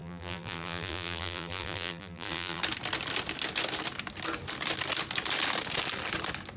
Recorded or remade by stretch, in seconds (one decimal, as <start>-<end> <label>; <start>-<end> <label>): 0.0-2.6 remade; 2.6-6.6 recorded